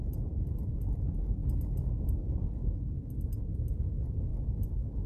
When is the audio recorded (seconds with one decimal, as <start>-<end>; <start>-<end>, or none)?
0.0-5.1